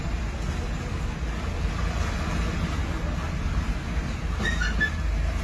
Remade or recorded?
recorded